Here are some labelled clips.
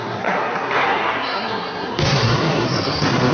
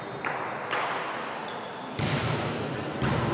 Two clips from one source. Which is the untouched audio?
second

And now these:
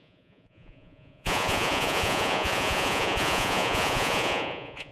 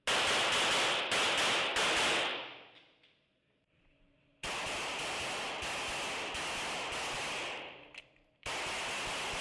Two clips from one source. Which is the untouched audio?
second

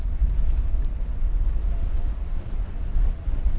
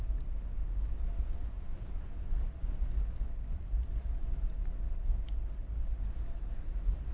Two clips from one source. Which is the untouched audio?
second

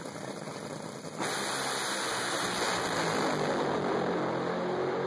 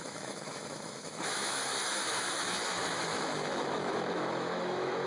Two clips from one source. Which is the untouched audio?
first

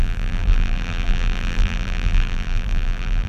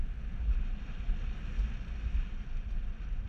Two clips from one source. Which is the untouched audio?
second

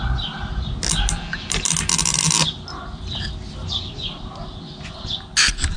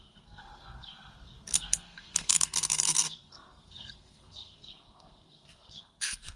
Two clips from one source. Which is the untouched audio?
first